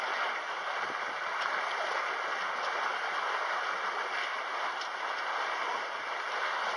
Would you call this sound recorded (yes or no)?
yes